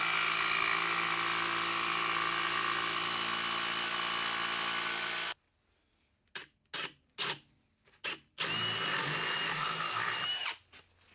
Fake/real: real